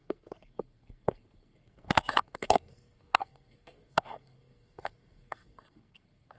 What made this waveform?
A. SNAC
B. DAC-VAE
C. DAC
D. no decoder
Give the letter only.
A